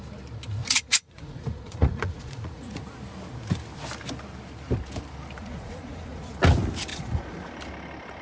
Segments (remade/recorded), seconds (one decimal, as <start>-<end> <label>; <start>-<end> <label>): 0.0-0.6 recorded; 0.6-2.8 remade; 2.8-5.4 recorded; 5.4-6.3 remade; 6.3-6.9 recorded; 6.9-7.5 remade; 7.5-8.2 recorded